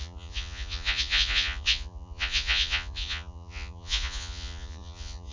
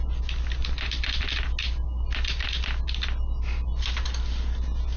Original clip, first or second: second